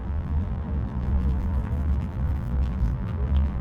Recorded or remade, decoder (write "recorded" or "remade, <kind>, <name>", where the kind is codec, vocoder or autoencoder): remade, vocoder, BigVGAN v2